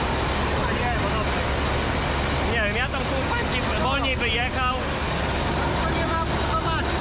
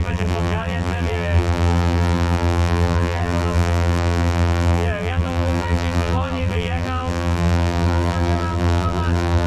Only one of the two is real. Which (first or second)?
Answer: first